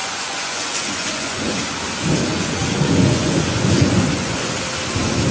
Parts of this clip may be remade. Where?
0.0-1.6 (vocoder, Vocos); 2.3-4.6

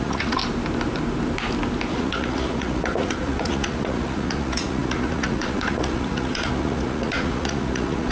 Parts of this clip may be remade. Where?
0.0-0.4 (vocoder, Vocos); 1.9-8.1

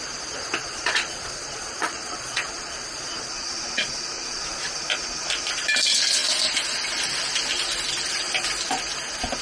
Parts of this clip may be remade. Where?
0.6-4.6 (vocoder, Vocos)

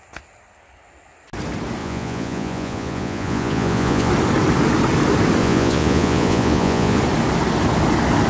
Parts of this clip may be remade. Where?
1.8-4.1 (vocoder, Vocos); 5.4-7.0